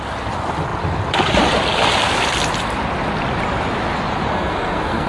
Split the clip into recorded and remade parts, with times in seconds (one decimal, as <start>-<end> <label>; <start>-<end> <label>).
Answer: 0.0-4.3 recorded; 4.3-5.1 remade